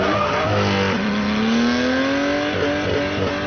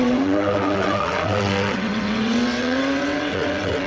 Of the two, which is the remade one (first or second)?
second